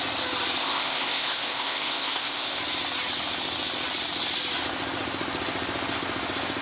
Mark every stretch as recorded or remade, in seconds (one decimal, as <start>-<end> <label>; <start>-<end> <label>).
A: 0.0-0.6 recorded; 0.6-2.6 remade; 2.6-6.6 recorded